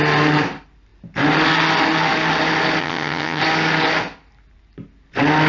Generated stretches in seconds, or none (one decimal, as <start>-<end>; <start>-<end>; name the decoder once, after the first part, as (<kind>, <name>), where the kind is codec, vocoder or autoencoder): 2.8-3.4 (vocoder, HiFi-GAN)